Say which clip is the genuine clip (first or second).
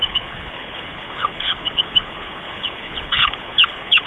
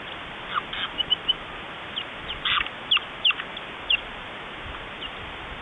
second